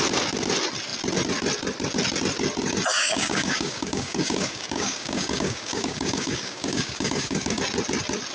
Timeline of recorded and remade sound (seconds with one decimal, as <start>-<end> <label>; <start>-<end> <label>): 0.0-2.9 recorded; 2.9-7.6 remade; 7.6-8.3 recorded